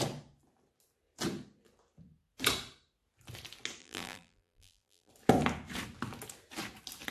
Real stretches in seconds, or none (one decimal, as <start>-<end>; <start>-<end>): 0.0-3.8; 5.1-7.1